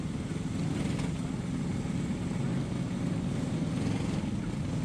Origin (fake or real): real